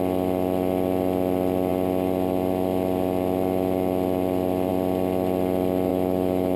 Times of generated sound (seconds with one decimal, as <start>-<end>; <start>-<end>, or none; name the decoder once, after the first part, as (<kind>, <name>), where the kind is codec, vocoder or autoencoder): 5.9-6.6 (autoencoder, DAC-VAE)